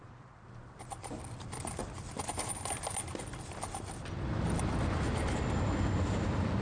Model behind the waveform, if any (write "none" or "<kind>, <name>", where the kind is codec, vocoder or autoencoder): vocoder, BigVGAN v2